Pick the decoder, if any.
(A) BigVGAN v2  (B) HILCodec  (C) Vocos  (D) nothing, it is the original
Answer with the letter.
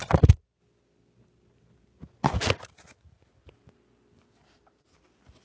D